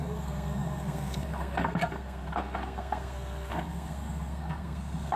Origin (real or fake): fake